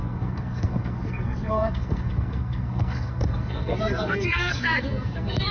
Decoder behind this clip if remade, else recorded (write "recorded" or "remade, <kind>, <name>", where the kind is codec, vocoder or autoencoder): remade, codec, SNAC